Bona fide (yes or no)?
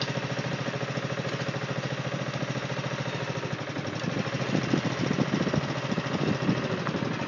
yes